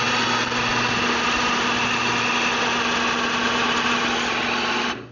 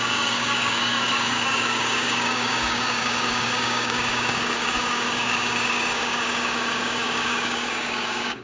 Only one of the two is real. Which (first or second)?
first